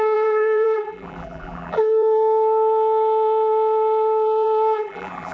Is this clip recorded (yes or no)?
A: no